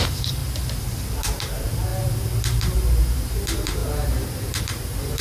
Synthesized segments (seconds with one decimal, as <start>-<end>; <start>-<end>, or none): 0.0-0.4; 1.2-5.2